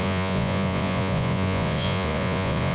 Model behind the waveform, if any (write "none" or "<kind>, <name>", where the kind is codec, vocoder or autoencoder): vocoder, Vocos